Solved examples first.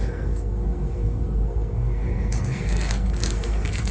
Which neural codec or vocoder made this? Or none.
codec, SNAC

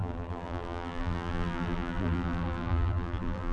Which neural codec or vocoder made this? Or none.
vocoder, BigVGAN v2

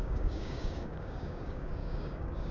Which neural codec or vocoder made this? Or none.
codec, DAC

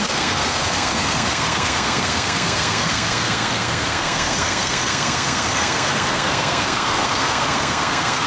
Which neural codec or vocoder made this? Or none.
codec, SNAC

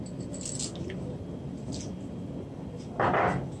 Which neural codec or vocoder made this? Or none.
none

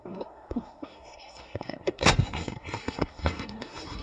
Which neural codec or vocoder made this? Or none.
codec, SNAC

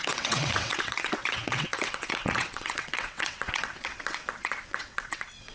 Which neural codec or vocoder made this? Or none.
vocoder, WaveNeXt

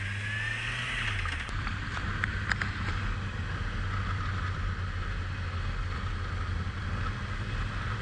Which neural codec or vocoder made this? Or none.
none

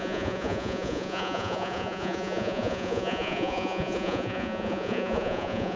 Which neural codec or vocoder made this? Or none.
vocoder, Vocos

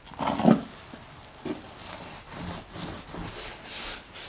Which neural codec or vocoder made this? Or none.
none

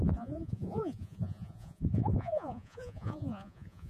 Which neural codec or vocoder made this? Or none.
vocoder, Vocos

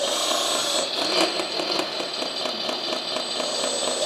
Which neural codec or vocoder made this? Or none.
none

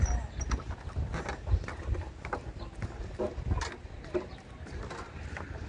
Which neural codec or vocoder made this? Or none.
none